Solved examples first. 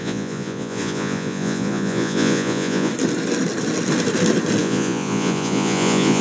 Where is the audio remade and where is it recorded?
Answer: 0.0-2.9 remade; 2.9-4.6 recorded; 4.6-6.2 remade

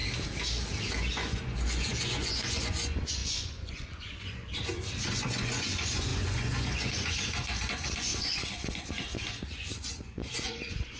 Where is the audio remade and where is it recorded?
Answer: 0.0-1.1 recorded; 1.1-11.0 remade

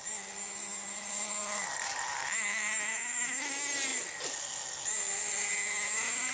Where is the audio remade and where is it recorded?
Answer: 0.0-6.3 recorded

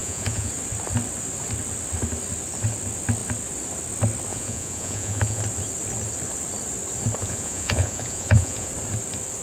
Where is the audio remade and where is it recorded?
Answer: 0.0-0.5 remade; 0.5-4.3 recorded; 4.3-5.4 remade; 5.4-7.2 recorded; 7.2-8.7 remade; 8.7-9.4 recorded

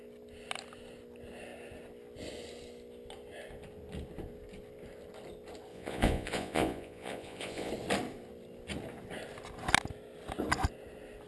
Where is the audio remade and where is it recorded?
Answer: 0.0-5.7 recorded; 5.7-7.7 remade; 7.7-11.3 recorded